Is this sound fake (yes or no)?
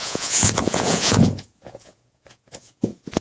yes